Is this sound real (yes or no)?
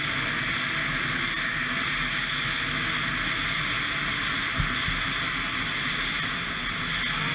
yes